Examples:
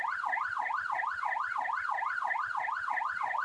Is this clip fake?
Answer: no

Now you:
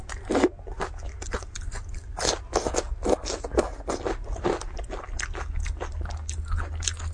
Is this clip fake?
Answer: no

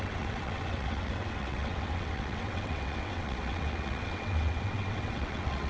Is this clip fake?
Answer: yes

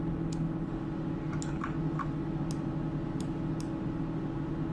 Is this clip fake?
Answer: no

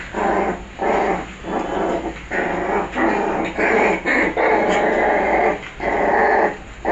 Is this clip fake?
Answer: no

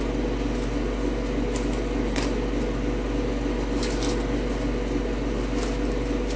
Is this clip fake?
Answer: no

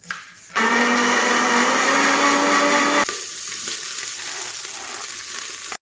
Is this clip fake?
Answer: no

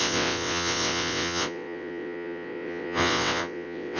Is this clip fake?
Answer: yes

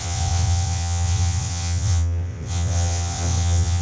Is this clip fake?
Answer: yes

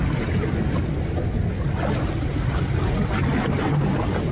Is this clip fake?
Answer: no